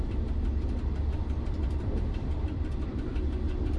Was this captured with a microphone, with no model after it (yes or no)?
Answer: no